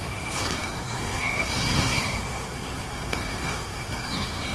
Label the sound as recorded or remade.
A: remade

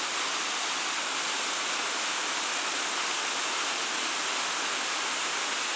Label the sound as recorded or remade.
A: recorded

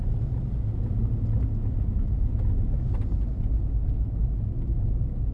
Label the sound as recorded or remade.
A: recorded